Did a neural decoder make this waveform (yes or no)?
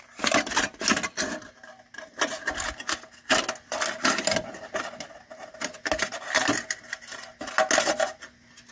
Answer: no